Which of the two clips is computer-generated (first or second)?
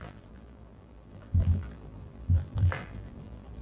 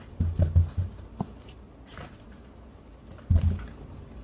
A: first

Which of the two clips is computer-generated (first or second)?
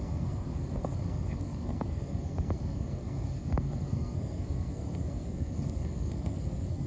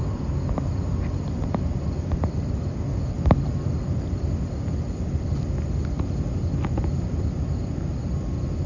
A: first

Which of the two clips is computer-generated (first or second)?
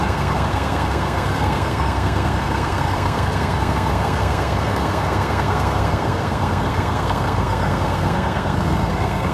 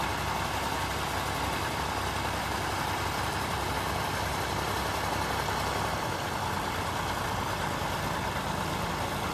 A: first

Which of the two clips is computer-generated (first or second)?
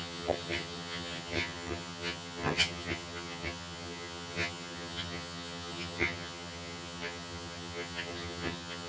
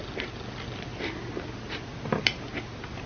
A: first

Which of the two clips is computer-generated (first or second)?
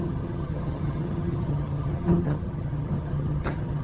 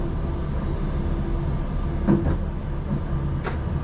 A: first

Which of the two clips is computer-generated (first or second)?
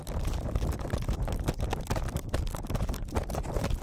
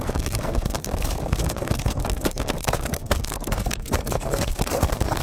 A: second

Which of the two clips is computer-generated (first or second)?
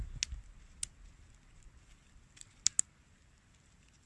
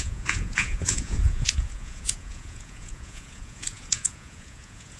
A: second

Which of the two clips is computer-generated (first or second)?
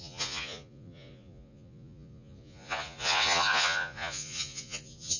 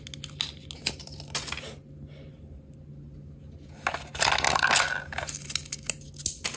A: first